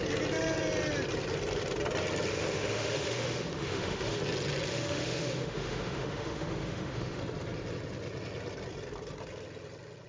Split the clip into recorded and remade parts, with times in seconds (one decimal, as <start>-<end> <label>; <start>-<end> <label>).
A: 0.0-2.3 recorded; 2.3-4.2 remade; 4.2-4.7 recorded; 4.7-7.2 remade; 7.2-10.1 recorded